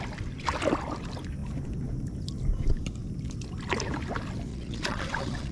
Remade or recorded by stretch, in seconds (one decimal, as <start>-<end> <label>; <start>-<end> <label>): 0.0-4.5 recorded; 4.5-5.5 remade